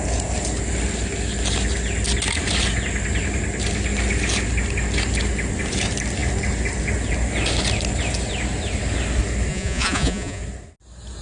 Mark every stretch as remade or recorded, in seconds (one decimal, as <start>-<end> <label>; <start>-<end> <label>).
0.0-9.5 recorded; 9.5-10.4 remade; 10.4-11.2 recorded